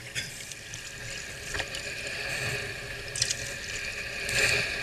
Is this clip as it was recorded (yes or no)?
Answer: yes